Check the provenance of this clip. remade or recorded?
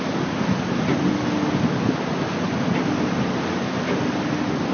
recorded